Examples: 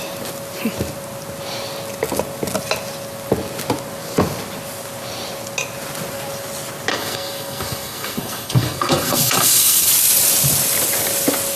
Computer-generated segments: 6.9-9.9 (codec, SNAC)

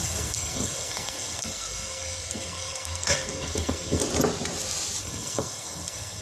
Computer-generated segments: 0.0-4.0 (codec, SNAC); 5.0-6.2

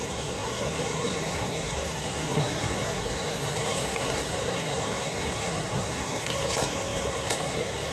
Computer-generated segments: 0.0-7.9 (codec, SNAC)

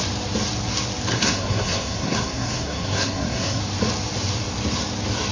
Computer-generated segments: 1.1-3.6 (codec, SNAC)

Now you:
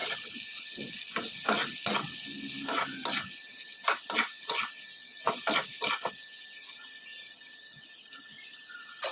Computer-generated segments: none

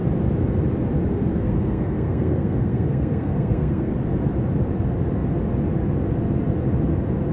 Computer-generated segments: 1.3-3.9 (codec, SNAC)

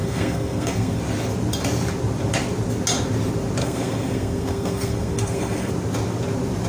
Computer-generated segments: 0.0-1.0 (codec, SNAC); 3.6-5.7

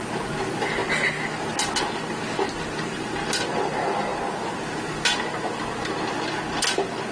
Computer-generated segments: none